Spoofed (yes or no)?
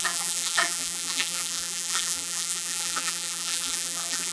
yes